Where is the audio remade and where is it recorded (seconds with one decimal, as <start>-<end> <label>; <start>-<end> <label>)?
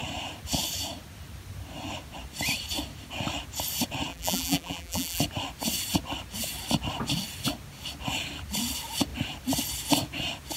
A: 0.0-4.1 recorded; 4.1-5.2 remade; 5.2-10.6 recorded